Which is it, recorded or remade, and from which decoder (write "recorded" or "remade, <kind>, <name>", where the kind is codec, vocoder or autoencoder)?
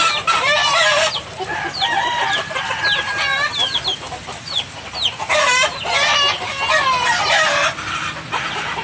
recorded